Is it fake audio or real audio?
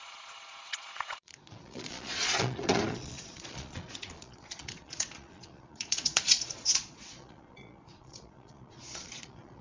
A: fake